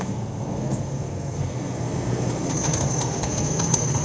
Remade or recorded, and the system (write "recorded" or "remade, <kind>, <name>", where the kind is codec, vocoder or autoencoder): remade, codec, SNAC